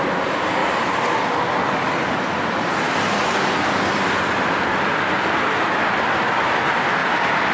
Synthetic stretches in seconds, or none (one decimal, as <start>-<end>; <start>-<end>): none